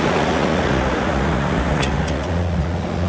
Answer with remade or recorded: remade